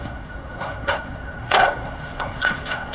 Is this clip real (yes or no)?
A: no